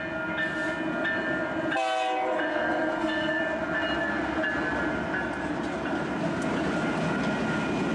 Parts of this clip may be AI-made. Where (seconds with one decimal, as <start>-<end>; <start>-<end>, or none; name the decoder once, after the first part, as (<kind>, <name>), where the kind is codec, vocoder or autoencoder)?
2.5-3.4 (codec, SNAC)